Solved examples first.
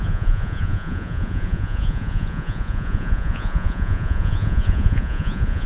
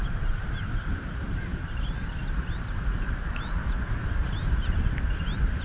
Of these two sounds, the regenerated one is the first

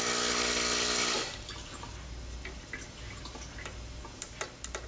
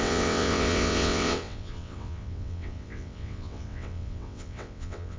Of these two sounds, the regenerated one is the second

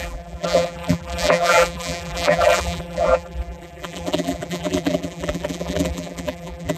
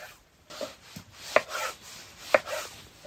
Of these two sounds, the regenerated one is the first